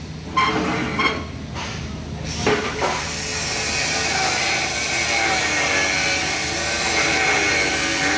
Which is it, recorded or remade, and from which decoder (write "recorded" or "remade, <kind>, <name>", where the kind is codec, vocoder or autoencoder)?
recorded